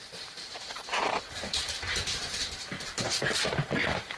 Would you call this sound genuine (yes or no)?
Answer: no